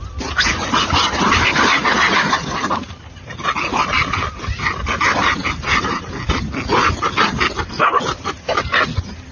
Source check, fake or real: real